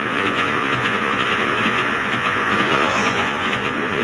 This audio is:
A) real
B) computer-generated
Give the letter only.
B